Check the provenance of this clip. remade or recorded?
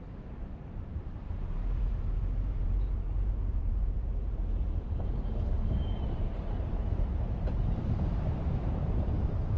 remade